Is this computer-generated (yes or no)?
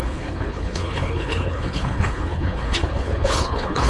yes